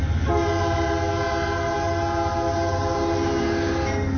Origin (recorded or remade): recorded